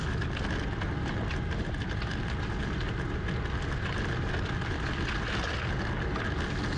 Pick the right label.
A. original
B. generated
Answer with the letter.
A